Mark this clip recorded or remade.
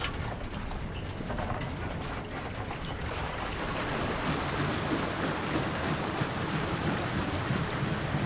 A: recorded